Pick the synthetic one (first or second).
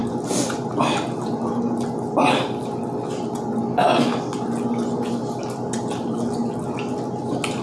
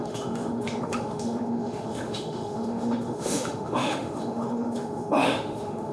second